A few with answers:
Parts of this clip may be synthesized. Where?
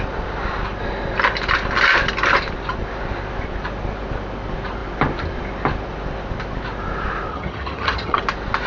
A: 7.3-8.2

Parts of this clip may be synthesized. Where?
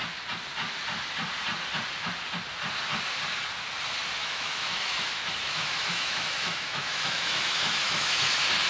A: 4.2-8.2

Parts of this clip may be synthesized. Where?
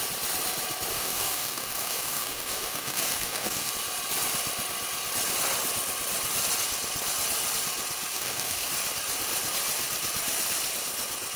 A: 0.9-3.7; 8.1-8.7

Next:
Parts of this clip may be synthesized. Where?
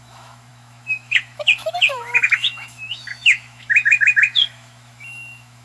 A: 0.0-5.6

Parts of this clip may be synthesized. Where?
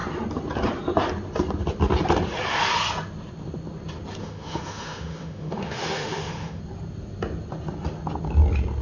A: 4.2-6.6